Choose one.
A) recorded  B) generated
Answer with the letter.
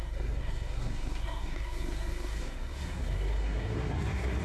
B